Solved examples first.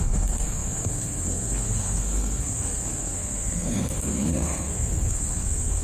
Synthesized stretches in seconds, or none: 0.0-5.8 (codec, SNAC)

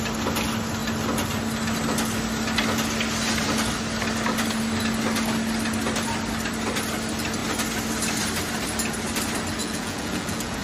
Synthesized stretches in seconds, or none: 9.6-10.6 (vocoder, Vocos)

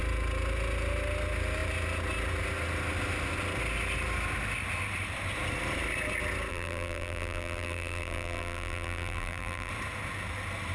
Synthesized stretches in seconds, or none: 6.5-9.7 (vocoder, BigVGAN v2)